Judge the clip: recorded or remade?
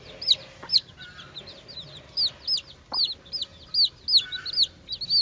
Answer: recorded